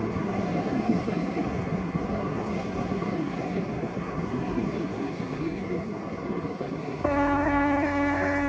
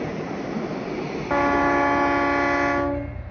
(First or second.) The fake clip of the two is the first